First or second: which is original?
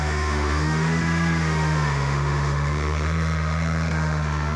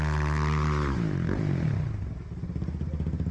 second